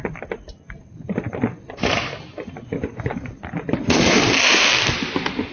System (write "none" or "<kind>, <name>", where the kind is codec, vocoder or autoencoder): none